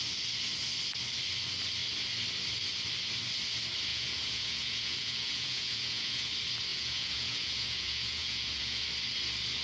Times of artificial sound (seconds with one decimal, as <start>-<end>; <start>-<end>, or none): 3.9-6.3; 6.7-8.8